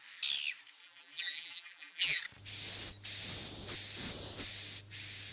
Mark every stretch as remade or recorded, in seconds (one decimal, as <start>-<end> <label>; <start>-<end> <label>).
0.0-0.8 recorded; 0.8-2.2 remade; 2.2-5.3 recorded